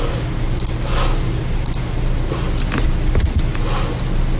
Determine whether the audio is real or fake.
real